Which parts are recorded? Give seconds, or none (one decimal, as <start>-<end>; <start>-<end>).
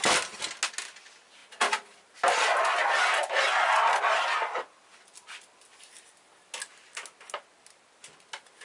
0.0-8.6